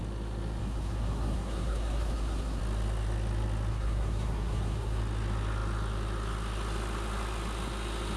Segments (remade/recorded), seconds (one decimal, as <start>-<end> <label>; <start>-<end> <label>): 0.0-0.6 recorded; 0.6-2.6 remade; 2.6-3.7 recorded; 3.7-5.0 remade; 5.0-8.2 recorded

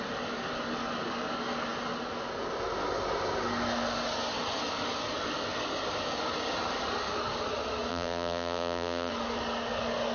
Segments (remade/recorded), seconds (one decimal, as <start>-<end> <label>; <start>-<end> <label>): 0.0-7.9 recorded; 7.9-9.1 remade; 9.1-10.1 recorded